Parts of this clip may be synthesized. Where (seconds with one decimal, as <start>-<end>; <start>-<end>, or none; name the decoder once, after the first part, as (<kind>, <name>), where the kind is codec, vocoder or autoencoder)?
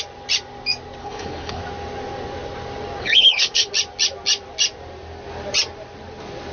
1.0-1.6 (codec, HILCodec); 3.0-3.7